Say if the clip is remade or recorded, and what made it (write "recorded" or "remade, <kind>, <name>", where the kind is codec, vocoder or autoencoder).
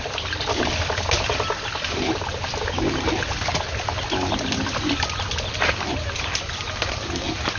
recorded